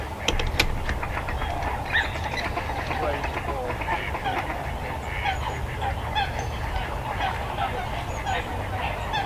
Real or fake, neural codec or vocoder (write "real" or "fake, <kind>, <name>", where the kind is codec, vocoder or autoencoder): real